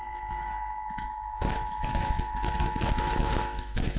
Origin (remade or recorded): remade